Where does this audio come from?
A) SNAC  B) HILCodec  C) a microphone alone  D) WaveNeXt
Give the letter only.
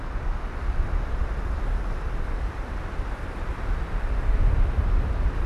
C